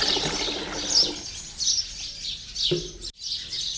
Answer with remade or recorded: recorded